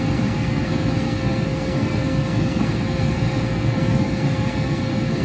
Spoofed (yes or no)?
yes